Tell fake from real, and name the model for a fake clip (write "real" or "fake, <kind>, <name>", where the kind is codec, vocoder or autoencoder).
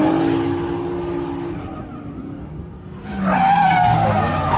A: real